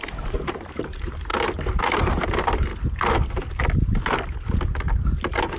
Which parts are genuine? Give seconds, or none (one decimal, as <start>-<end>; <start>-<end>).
1.3-1.8; 2.7-5.6